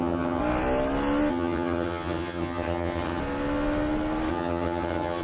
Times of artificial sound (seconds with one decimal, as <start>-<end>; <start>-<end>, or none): 0.0-0.4; 1.3-3.2; 4.3-5.2